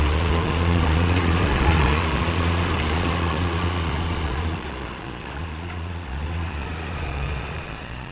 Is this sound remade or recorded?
remade